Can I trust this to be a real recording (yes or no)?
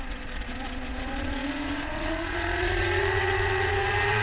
no